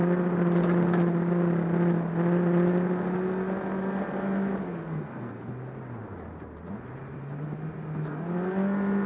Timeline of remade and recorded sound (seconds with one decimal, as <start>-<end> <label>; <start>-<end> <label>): 0.0-4.8 recorded; 4.8-5.5 remade; 5.5-9.1 recorded